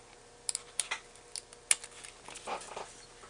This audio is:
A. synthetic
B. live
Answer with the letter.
B